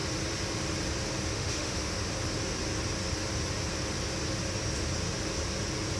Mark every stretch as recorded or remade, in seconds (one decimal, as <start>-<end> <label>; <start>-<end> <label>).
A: 0.0-1.3 recorded; 1.3-2.1 remade; 2.1-6.0 recorded